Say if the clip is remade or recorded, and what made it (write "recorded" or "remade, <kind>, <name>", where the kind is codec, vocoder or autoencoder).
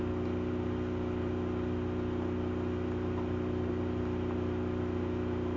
recorded